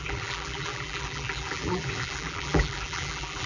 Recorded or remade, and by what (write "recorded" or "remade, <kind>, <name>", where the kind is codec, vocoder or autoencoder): remade, vocoder, BigVGAN v2